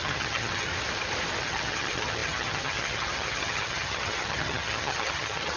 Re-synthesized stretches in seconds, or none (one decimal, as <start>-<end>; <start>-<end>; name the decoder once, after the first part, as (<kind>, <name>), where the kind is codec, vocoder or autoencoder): 0.0-0.7 (vocoder, HiFi-GAN); 1.4-5.6